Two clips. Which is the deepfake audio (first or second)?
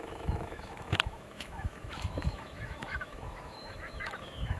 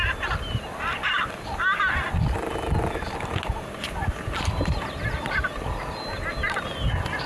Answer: first